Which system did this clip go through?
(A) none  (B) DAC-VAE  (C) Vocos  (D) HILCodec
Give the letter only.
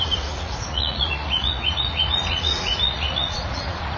C